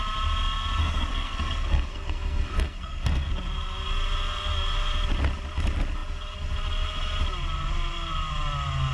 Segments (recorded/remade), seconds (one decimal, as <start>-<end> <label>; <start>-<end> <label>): 0.0-0.8 recorded; 0.8-3.3 remade; 3.3-8.9 recorded